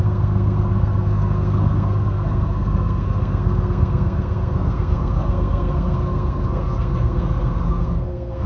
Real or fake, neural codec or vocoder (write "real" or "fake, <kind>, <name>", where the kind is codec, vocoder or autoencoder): fake, codec, SNAC